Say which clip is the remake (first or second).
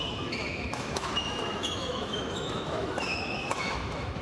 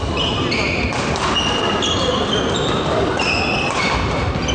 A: first